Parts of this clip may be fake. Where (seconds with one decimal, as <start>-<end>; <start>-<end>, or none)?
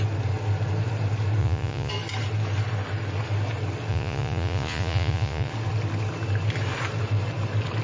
1.4-1.9; 3.9-5.5